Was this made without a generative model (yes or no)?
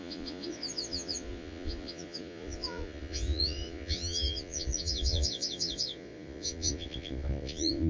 no